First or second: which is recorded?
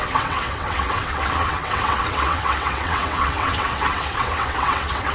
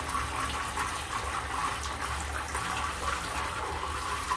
second